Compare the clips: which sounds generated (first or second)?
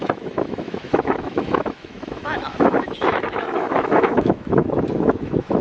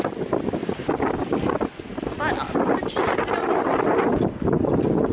first